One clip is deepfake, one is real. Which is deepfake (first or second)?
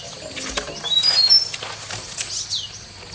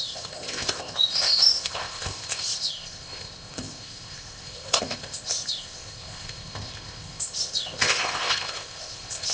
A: second